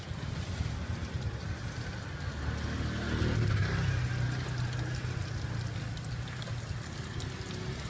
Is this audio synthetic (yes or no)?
no